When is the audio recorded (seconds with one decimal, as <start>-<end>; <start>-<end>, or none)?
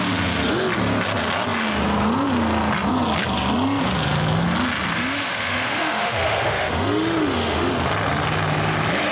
0.0-4.9; 7.7-9.1